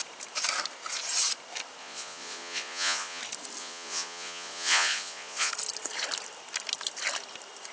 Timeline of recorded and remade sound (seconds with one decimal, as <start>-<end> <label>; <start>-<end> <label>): 0.0-1.8 recorded; 1.8-3.2 remade; 3.2-3.6 recorded; 3.6-5.5 remade; 5.5-7.7 recorded